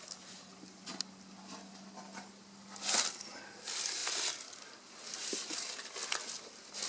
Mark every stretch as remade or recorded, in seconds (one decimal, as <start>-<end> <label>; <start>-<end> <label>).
0.0-6.9 recorded